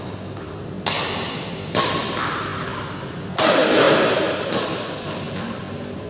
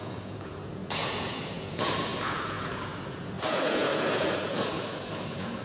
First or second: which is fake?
second